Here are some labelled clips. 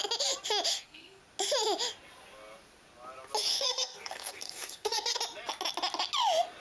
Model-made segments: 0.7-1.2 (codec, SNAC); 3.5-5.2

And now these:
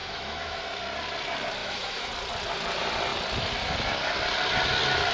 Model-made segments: 0.0-0.6 (autoencoder, DAC-VAE); 1.6-2.1

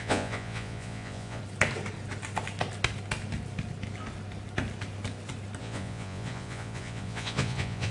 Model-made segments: 0.0-1.4 (vocoder, Vocos); 5.6-7.9

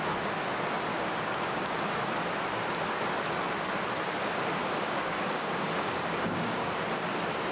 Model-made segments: 0.9-1.8 (codec, DAC); 4.6-6.7

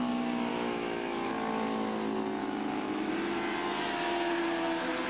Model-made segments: 0.5-1.3 (autoencoder, DAC-VAE); 2.4-3.1